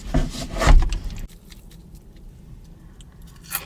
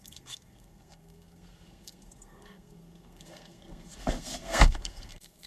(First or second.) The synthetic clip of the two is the second